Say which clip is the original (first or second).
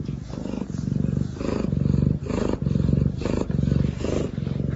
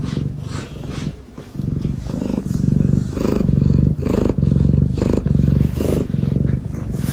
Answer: first